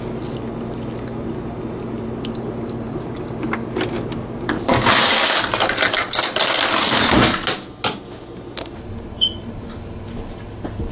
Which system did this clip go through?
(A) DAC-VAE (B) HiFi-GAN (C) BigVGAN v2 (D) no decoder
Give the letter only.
D